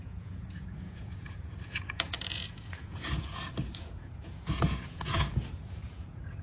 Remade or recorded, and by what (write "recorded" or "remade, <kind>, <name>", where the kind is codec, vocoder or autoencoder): remade, vocoder, Vocos